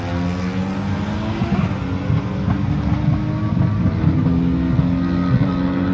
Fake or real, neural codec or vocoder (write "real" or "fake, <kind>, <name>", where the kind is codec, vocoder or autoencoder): real